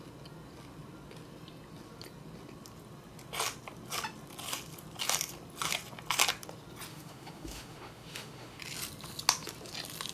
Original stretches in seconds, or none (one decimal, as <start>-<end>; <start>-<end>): 0.0-6.9; 8.6-10.1